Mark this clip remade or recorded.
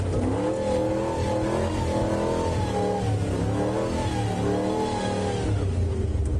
recorded